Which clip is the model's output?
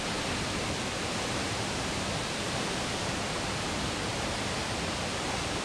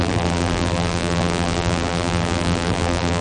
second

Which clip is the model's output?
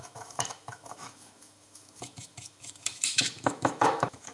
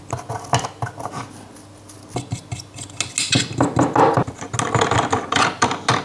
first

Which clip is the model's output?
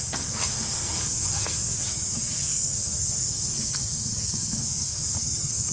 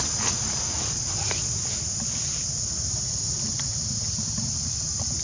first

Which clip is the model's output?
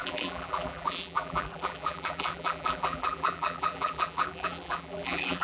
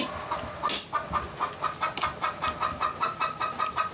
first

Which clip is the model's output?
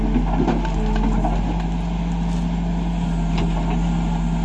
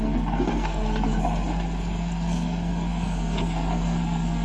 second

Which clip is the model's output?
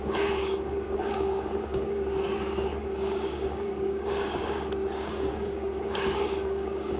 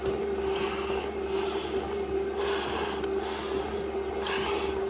first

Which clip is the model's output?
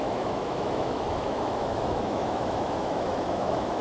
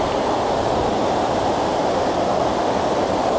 first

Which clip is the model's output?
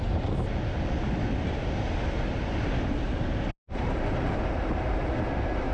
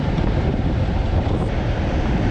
second